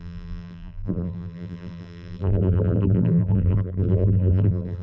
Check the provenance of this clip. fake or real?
fake